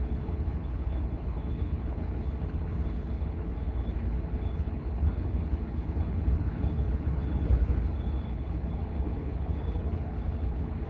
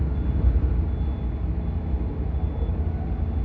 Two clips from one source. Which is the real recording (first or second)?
second